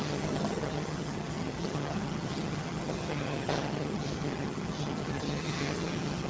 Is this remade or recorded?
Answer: remade